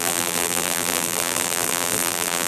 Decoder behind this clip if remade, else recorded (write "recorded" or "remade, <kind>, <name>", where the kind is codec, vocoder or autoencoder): remade, vocoder, BigVGAN v2